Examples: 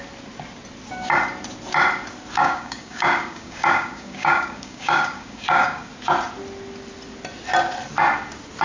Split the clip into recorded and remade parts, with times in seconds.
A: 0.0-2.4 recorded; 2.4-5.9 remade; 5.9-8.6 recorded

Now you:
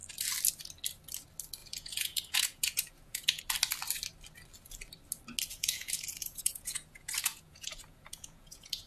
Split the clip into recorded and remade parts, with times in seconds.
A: 0.0-1.6 recorded; 1.6-3.4 remade; 3.4-5.5 recorded; 5.5-8.9 remade

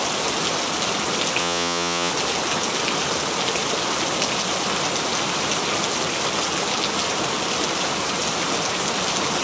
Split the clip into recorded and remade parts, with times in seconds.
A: 0.0-1.4 recorded; 1.4-2.1 remade; 2.1-9.4 recorded